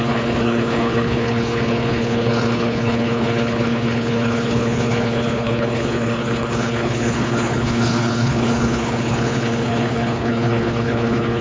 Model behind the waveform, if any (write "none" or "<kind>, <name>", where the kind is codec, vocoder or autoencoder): codec, HILCodec